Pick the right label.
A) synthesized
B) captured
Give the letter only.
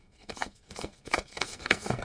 A